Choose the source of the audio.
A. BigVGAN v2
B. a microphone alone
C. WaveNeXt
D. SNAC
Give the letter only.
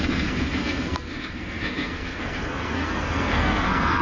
D